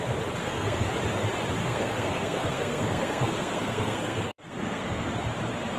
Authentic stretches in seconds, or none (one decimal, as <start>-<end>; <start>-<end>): 0.0-0.4; 0.9-1.6; 5.1-5.8